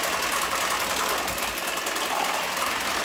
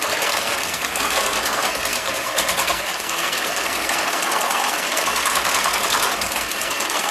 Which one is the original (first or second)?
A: first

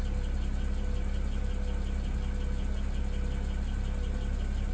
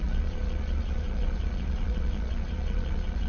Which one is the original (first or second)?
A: first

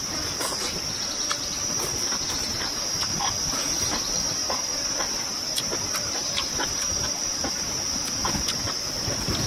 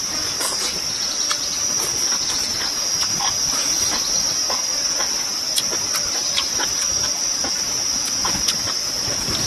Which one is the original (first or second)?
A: second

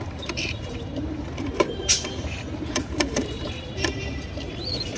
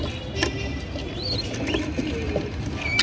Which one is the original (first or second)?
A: second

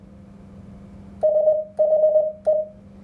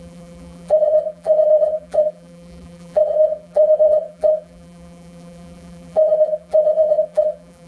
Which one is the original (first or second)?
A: first